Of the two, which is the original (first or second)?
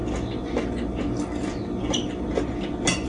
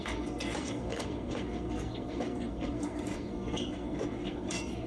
first